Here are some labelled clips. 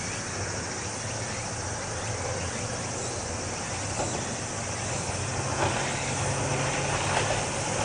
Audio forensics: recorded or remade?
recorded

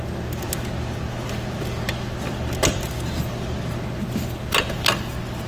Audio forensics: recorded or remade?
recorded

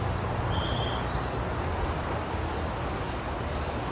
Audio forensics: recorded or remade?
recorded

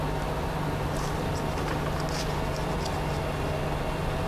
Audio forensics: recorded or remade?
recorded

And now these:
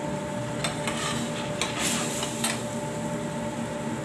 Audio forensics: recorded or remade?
recorded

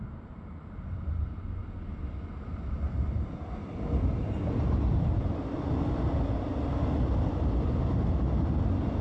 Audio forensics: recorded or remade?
recorded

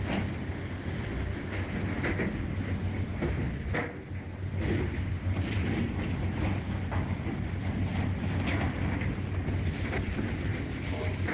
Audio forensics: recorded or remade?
recorded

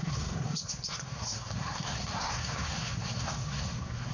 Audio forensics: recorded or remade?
remade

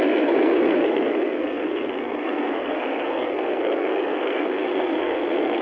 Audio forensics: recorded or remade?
remade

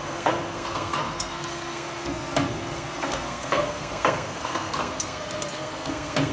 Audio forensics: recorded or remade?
remade